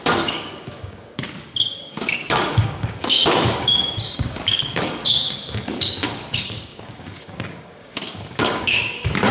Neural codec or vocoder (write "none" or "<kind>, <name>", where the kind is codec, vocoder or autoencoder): codec, DAC